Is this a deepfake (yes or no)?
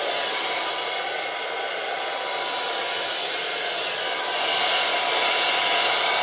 no